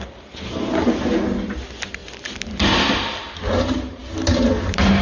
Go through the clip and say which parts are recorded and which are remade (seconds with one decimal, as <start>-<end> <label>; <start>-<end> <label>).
0.0-5.0 recorded